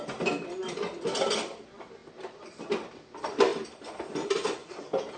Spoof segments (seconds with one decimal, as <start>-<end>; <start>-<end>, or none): 3.5-4.1; 4.6-5.2